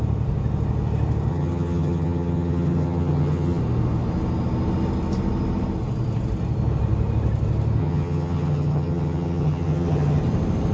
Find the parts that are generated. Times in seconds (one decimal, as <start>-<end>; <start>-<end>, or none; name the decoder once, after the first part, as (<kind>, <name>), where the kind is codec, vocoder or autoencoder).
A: 1.3-3.6 (vocoder, HiFi-GAN); 7.8-10.2